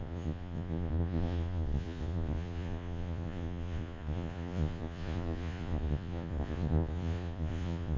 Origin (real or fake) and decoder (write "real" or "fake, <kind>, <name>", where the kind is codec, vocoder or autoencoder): fake, vocoder, Vocos